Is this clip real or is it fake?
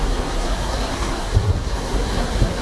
fake